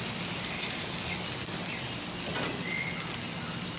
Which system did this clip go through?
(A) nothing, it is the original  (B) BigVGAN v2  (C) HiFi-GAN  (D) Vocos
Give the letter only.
A